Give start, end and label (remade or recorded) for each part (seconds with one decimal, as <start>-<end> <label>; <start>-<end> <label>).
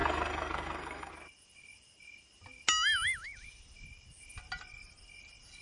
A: 0.0-1.1 remade; 1.1-5.6 recorded